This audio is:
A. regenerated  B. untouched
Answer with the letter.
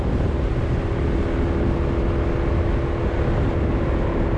B